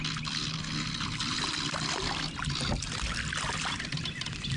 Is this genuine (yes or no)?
yes